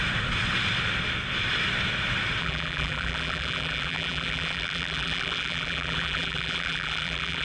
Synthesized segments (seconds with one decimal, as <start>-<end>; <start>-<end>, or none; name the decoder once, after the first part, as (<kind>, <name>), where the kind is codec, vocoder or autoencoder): 2.4-7.4 (vocoder, BigVGAN v2)